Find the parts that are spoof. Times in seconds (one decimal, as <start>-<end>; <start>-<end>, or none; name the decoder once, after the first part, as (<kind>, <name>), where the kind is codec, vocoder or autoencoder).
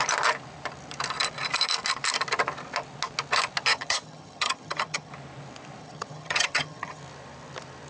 3.7-5.1 (vocoder, HiFi-GAN); 5.8-7.0